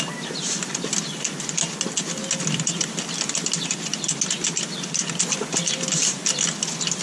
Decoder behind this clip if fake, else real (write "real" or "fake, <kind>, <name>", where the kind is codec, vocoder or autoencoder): real